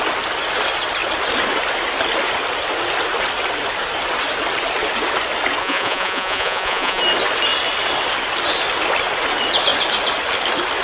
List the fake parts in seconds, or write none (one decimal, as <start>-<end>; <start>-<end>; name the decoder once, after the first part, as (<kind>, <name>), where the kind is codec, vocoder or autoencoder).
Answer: 5.6-7.0 (vocoder, Vocos)